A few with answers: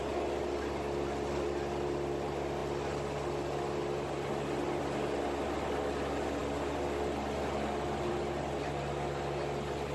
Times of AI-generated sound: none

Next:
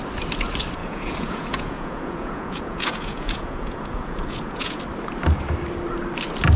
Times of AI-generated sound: 0.8-4.8 (vocoder, Vocos)